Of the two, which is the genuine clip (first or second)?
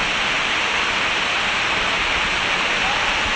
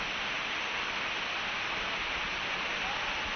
second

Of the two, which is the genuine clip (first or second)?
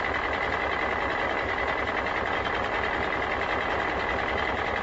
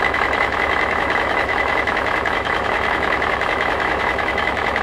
first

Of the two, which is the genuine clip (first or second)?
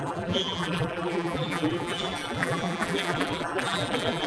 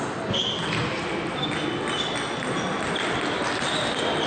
second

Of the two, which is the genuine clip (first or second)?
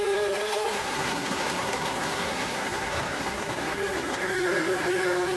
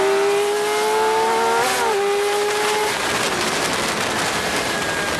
second